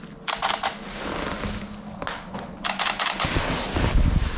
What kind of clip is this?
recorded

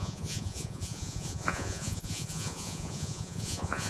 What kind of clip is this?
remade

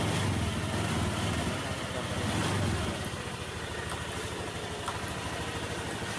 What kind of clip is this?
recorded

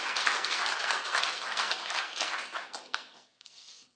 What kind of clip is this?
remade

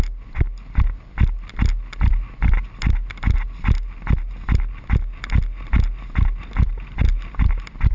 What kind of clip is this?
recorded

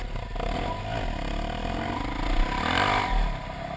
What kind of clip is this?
recorded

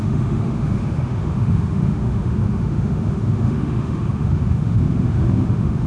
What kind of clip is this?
remade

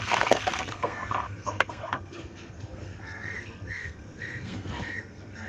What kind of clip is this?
remade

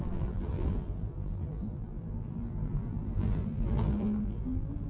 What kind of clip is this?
remade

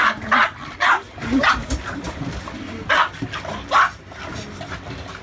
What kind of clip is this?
recorded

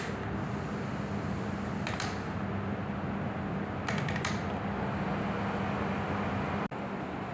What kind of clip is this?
recorded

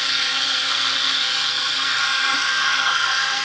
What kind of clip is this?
remade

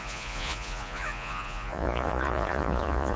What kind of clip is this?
remade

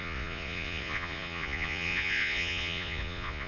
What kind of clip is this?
remade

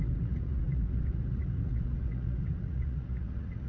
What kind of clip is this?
remade